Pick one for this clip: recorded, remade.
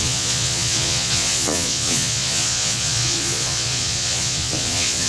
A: remade